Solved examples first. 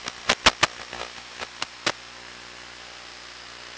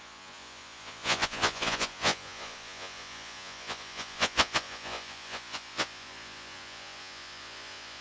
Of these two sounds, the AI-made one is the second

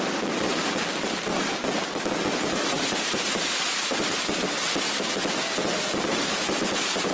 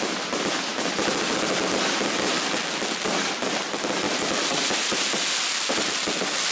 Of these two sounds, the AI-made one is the first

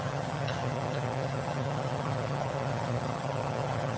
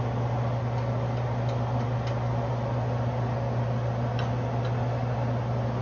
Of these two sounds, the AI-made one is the first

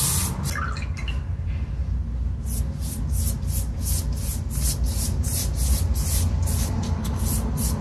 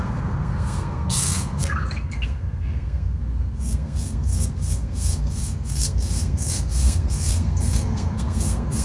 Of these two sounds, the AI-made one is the second